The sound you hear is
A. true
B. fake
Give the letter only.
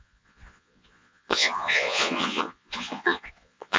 B